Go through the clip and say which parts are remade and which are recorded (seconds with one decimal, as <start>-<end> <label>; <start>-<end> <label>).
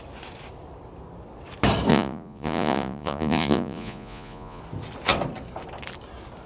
0.0-1.9 recorded; 1.9-4.6 remade; 4.6-6.5 recorded